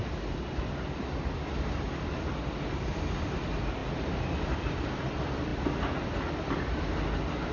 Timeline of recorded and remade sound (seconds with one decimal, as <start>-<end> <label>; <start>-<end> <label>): 0.0-2.1 recorded; 2.1-3.8 remade; 3.8-4.4 recorded; 4.4-5.5 remade; 5.5-6.3 recorded; 6.3-7.5 remade